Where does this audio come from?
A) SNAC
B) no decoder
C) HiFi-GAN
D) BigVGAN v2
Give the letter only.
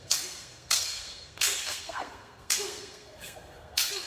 A